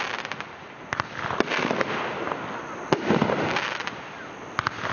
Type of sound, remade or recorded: recorded